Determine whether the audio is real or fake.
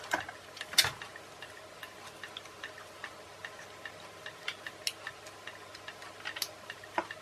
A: real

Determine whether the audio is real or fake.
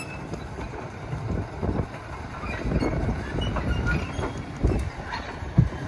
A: fake